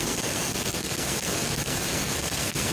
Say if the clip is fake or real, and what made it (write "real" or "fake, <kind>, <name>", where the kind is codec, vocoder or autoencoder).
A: fake, codec, SNAC